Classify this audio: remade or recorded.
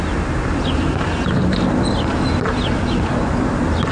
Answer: recorded